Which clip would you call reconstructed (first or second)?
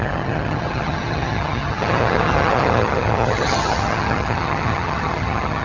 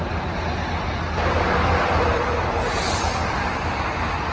first